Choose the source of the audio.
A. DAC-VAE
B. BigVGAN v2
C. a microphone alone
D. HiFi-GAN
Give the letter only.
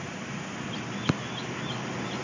C